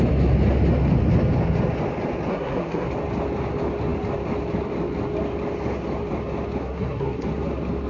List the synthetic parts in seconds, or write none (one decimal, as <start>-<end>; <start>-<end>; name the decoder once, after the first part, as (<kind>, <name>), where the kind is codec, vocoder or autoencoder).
2.3-2.9 (codec, SNAC); 6.6-7.4